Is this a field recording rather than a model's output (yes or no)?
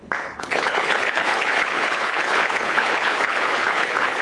no